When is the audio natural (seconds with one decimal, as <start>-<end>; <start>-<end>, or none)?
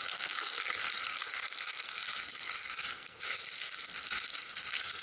none